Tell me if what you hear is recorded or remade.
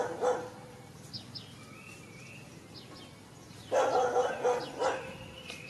recorded